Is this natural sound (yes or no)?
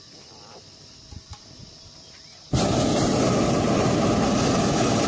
yes